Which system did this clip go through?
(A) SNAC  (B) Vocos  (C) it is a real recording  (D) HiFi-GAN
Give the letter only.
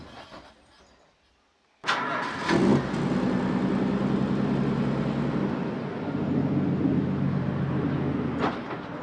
C